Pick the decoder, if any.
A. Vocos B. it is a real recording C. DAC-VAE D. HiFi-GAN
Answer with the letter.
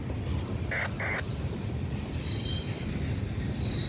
B